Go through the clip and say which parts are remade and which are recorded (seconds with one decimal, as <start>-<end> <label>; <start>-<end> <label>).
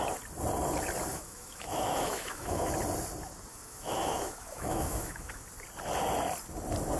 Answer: 0.0-1.1 recorded; 1.1-2.7 remade; 2.7-3.5 recorded; 3.5-5.4 remade; 5.4-7.0 recorded